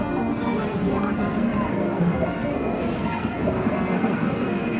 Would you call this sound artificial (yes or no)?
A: yes